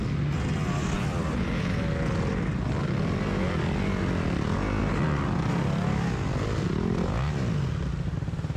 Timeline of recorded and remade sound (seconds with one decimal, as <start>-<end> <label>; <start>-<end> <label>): 0.0-8.6 recorded